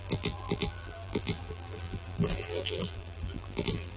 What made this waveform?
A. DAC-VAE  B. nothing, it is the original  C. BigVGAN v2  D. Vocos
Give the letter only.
C